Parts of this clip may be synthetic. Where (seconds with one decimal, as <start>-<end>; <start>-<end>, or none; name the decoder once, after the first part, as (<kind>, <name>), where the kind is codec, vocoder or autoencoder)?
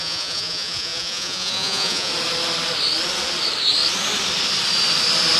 0.0-2.1 (vocoder, Vocos)